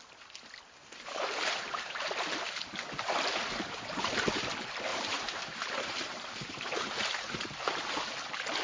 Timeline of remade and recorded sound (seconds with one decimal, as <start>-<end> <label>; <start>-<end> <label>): 0.0-0.8 recorded; 0.8-1.9 remade; 1.9-4.9 recorded; 4.9-7.9 remade; 7.9-8.6 recorded